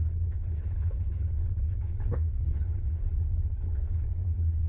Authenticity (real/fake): fake